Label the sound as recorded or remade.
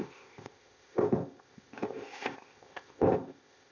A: remade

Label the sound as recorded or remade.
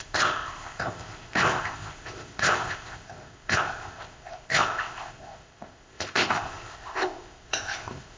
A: remade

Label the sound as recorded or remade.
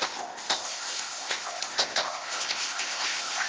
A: remade